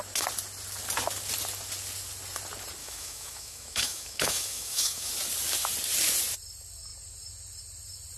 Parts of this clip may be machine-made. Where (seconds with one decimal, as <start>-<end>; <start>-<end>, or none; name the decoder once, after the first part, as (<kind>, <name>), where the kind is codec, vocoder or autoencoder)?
2.8-5.1 (autoencoder, DAC-VAE)